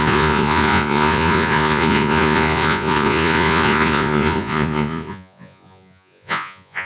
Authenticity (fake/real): fake